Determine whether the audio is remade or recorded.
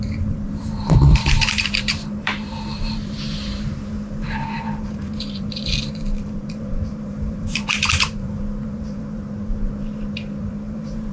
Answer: remade